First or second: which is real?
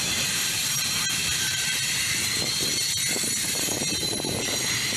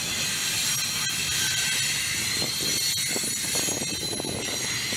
second